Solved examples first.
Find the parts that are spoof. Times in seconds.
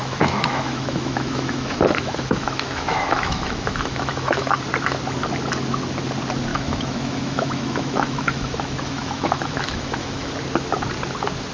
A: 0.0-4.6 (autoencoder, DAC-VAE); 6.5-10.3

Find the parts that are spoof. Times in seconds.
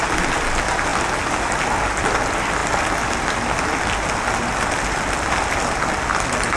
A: none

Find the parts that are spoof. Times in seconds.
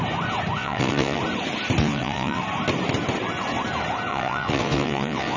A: 0.6-1.2 (vocoder, WaveNeXt); 1.8-2.4; 4.1-5.4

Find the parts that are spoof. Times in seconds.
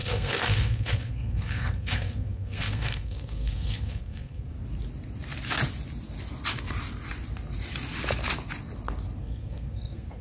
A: 0.0-4.5 (codec, SNAC); 9.2-10.2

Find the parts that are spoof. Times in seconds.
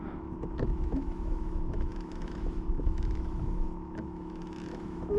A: 0.0-5.2 (autoencoder, DAC-VAE)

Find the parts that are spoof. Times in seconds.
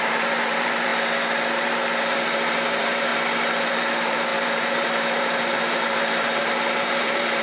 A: 0.0-0.9 (vocoder, BigVGAN v2); 1.5-3.1; 3.7-7.4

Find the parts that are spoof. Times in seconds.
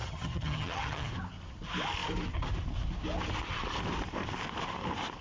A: 0.0-1.1 (vocoder, HiFi-GAN)